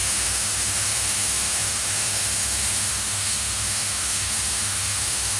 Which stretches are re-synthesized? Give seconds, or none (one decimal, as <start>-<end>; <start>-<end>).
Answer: 0.0-5.4